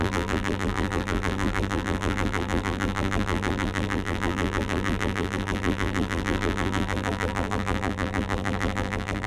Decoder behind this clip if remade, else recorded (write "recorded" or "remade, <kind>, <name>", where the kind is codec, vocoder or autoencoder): remade, vocoder, BigVGAN v2